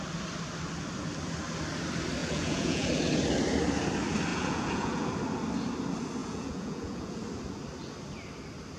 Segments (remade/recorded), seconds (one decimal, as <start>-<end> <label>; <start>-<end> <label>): 0.0-2.2 recorded; 2.2-2.9 remade; 2.9-4.3 recorded; 4.3-5.1 remade; 5.1-6.2 recorded; 6.2-7.2 remade; 7.2-8.8 recorded